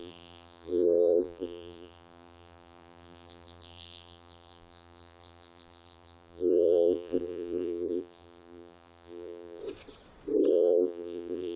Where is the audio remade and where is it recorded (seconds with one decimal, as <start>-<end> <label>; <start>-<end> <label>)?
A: 0.0-9.6 remade; 9.6-10.5 recorded; 10.5-11.6 remade